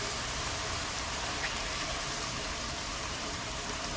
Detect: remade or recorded remade